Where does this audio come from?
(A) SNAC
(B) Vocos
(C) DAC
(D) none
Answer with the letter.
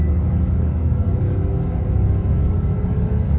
C